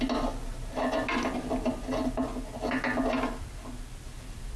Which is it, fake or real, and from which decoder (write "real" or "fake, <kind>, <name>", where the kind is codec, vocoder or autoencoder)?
real